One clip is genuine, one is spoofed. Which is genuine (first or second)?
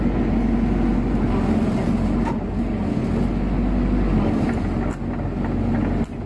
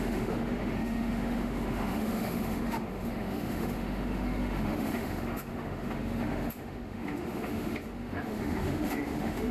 first